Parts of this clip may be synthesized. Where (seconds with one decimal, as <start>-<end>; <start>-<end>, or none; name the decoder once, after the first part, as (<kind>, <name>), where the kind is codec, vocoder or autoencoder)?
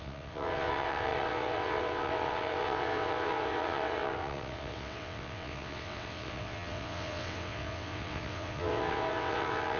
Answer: 0.0-9.8 (vocoder, WaveNeXt)